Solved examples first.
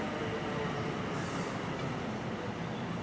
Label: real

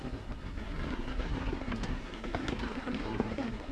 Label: fake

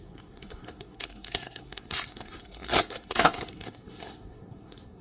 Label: fake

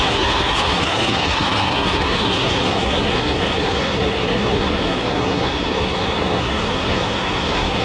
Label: fake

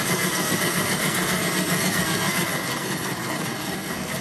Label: fake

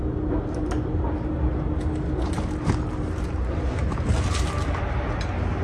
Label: real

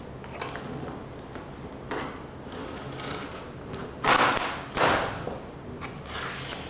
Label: real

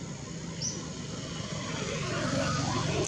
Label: real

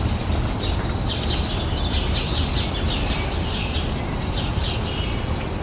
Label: real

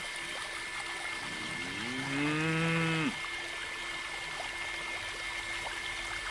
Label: real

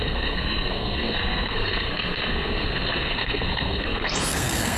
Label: fake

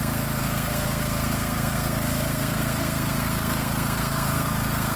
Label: fake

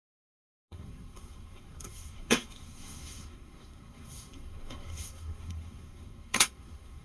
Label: fake